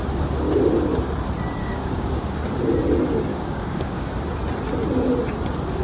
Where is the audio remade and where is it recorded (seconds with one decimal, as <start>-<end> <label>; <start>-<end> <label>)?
0.0-1.6 recorded; 1.6-2.4 remade; 2.4-3.3 recorded; 3.3-4.1 remade; 4.1-5.8 recorded